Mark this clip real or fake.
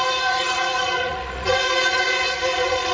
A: fake